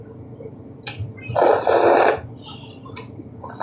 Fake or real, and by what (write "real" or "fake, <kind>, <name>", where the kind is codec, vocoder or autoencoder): fake, vocoder, BigVGAN v2